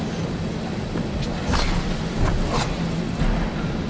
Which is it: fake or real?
real